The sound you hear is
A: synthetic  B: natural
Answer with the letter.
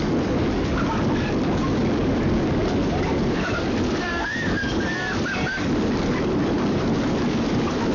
A